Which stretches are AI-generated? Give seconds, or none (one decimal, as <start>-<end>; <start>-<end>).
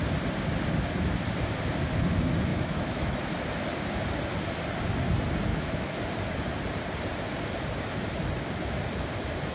2.5-3.2; 5.5-6.0